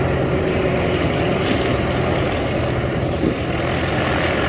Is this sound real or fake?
real